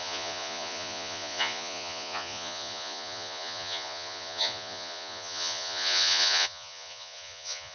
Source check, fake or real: fake